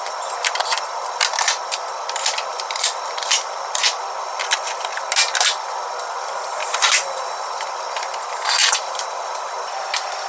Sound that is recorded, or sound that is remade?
recorded